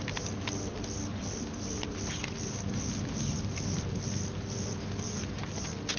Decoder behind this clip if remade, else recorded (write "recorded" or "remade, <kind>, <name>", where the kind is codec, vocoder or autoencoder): recorded